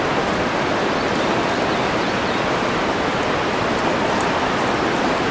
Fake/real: real